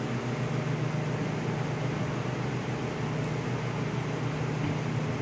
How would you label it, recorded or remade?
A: recorded